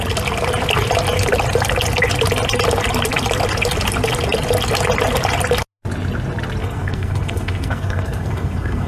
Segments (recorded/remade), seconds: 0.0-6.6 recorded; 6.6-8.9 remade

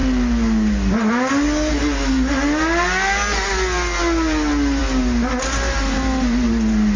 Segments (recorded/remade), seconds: 0.0-7.0 recorded

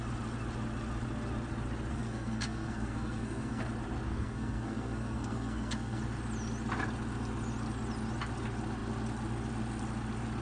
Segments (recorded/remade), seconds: 0.0-1.9 recorded; 1.9-3.6 remade; 3.6-4.1 recorded; 4.1-6.0 remade; 6.0-10.4 recorded